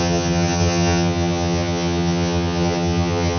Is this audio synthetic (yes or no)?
yes